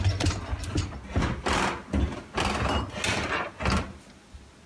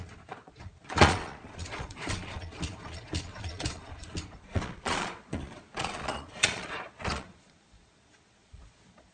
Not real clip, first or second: second